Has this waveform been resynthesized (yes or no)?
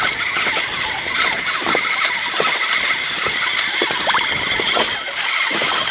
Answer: no